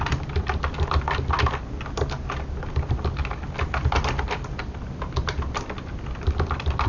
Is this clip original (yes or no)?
yes